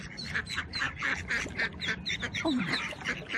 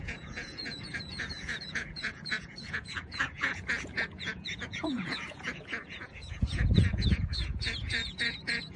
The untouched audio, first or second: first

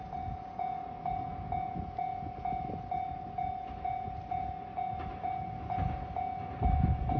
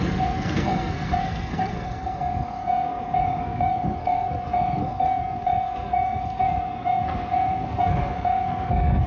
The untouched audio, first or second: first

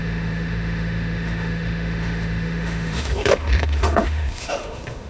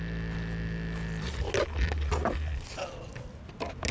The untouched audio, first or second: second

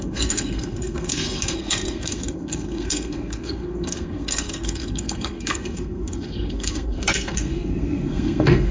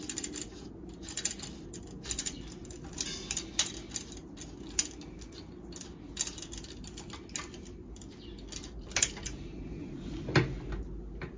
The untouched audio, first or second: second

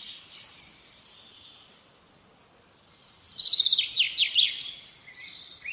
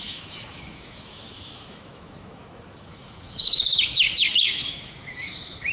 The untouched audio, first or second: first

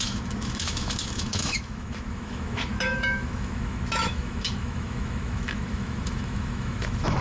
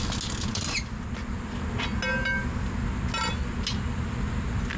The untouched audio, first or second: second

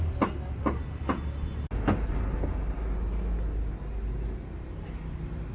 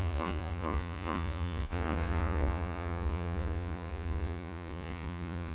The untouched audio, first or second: first